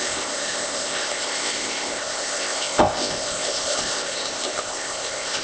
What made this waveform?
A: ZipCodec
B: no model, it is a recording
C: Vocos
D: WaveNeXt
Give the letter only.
A